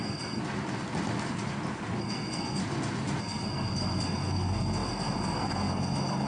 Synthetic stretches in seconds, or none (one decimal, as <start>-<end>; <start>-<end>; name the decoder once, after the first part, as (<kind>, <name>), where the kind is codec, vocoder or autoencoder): 0.0-0.4 (codec, SNAC); 2.0-2.6; 3.2-6.3